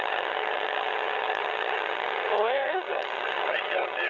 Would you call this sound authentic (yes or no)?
no